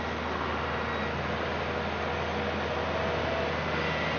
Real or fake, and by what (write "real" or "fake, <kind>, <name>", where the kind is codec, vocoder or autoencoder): real